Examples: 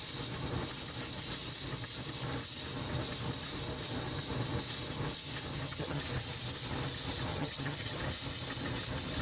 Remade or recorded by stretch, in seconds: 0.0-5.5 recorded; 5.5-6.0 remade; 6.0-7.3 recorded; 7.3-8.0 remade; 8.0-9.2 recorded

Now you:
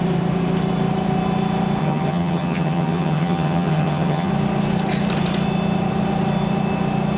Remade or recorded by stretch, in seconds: 0.0-1.8 recorded; 1.8-4.3 remade; 4.3-7.2 recorded